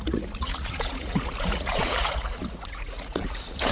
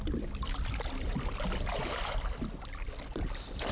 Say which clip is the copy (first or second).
first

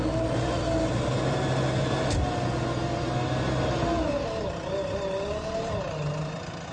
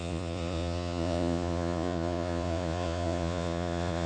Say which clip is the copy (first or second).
second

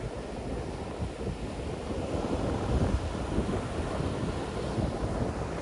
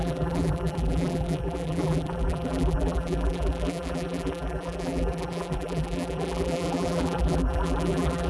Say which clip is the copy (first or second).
second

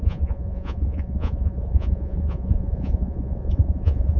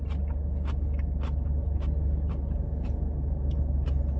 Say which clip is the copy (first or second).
first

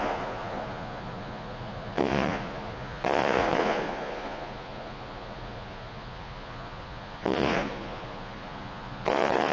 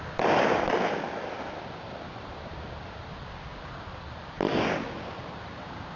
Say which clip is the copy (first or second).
first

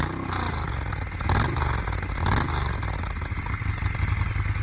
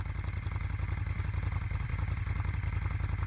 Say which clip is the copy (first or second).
second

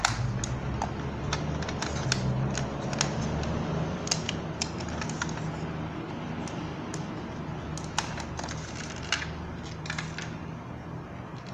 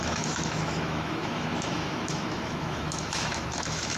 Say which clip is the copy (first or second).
second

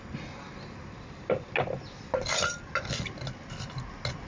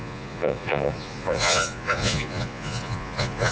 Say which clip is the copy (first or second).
second